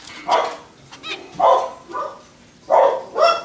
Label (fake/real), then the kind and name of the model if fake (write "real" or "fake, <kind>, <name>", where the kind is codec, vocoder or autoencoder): real